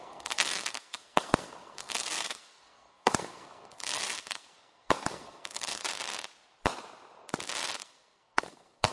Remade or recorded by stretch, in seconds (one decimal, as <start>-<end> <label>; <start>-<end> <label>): 0.0-5.8 remade; 5.8-7.8 recorded; 7.8-8.9 remade